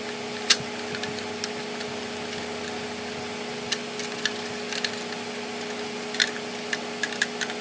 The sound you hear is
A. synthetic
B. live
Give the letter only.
B